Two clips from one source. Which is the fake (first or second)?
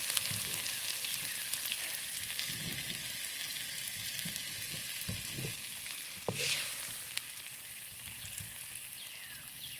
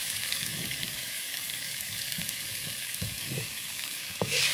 second